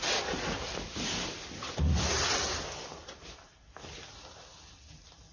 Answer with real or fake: real